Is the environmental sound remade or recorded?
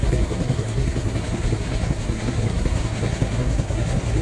remade